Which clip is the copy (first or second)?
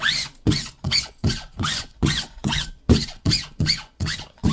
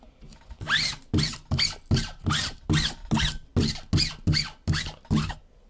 first